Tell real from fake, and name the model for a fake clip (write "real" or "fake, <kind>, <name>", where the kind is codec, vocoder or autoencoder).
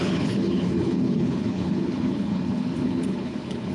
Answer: fake, codec, HILCodec